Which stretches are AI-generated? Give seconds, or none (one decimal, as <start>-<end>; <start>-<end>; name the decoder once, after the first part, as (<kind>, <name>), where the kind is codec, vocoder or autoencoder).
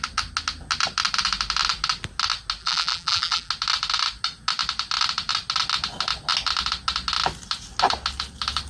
2.6-3.5 (vocoder, BigVGAN v2)